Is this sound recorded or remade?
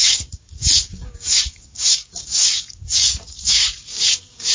remade